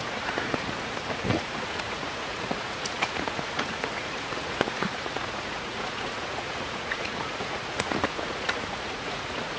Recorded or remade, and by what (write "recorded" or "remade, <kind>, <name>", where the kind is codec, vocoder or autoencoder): remade, vocoder, Vocos